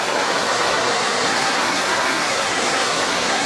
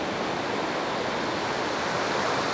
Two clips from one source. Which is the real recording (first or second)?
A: second